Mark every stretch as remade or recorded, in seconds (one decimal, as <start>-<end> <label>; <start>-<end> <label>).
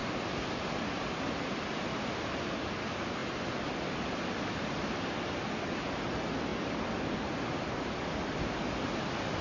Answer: 0.0-9.4 recorded